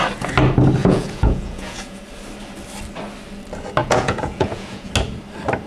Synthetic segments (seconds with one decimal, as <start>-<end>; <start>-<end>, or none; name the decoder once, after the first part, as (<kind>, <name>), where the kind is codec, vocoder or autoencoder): 0.8-2.0 (vocoder, Vocos); 3.8-4.9